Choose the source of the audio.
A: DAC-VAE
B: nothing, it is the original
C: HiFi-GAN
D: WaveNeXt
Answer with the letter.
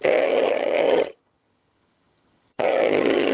C